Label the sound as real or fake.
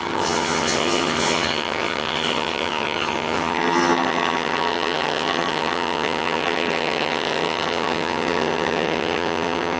fake